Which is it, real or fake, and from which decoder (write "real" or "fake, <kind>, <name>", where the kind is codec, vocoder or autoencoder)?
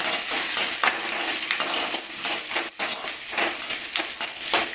real